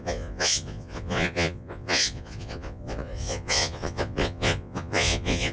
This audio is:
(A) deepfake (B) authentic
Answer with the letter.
A